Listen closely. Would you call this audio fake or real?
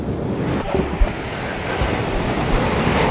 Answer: real